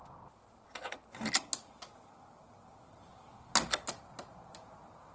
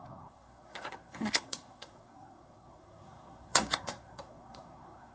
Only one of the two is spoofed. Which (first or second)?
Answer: second